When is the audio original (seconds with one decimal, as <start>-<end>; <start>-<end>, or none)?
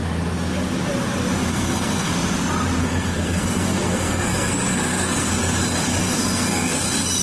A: 0.0-1.5; 2.1-2.8; 5.3-6.0; 6.8-7.2